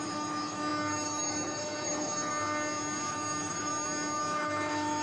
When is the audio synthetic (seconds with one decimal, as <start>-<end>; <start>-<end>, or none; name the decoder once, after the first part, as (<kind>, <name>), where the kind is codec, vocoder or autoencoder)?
0.0-2.3 (autoencoder, DAC-VAE); 3.1-3.7; 4.2-5.0